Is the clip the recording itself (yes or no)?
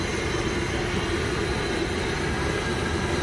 yes